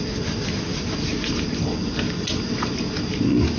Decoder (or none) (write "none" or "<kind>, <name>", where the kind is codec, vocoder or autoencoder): none